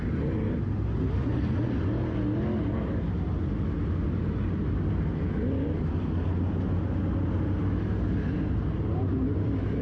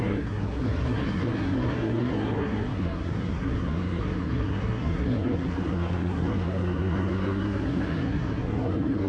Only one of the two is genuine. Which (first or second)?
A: first